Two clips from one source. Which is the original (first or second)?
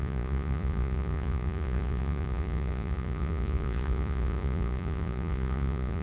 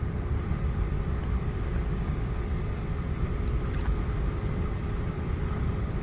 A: second